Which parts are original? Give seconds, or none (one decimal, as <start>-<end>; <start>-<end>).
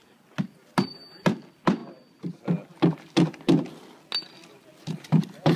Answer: 0.0-5.6